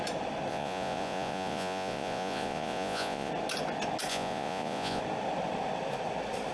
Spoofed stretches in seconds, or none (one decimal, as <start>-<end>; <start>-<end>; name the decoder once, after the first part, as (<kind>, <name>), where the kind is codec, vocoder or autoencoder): 0.5-3.3 (vocoder, Vocos); 4.1-5.0